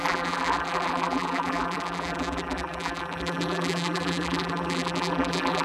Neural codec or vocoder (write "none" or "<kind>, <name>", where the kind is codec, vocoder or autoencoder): vocoder, BigVGAN v2